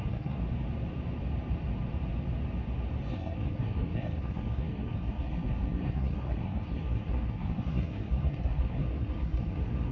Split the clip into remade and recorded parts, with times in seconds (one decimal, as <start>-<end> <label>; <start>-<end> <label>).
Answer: 0.0-0.4 remade; 0.4-3.1 recorded; 3.1-9.9 remade